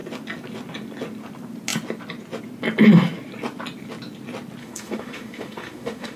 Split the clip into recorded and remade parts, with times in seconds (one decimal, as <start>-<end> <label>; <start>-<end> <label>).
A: 0.0-4.6 recorded; 4.6-6.2 remade